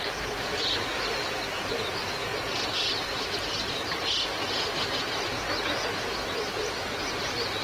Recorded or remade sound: recorded